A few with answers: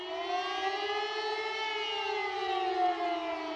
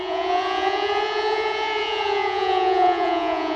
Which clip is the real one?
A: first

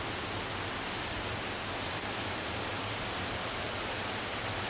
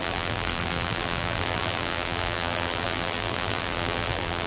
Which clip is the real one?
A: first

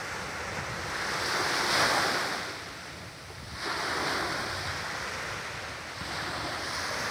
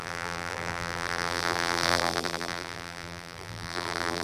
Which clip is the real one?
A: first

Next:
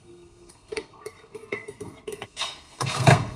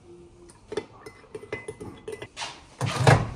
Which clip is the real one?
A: second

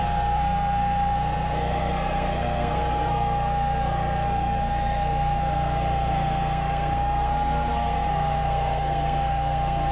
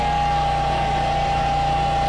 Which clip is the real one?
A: second